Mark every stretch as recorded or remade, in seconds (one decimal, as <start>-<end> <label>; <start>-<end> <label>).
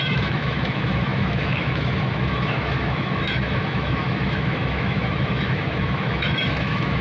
0.0-7.0 remade